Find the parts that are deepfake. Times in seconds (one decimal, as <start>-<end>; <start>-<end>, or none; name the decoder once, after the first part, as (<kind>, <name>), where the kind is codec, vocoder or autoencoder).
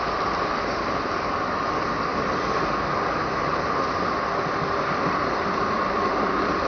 none